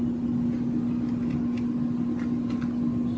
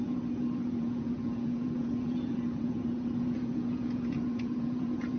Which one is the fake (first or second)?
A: second